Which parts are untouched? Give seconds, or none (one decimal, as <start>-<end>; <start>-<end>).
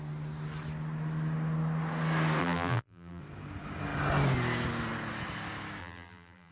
0.0-2.4; 3.2-5.8